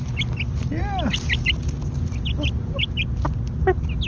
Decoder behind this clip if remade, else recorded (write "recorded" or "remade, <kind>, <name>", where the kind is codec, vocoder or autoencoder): recorded